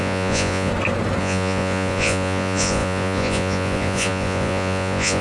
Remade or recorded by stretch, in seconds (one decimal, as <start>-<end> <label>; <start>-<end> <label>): 0.0-0.7 remade; 0.7-1.2 recorded; 1.2-5.2 remade